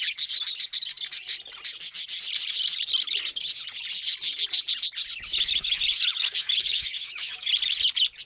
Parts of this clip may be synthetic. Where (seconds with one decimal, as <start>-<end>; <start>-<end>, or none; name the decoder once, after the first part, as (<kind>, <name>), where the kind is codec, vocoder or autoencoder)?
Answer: 5.3-7.5 (autoencoder, DAC-VAE)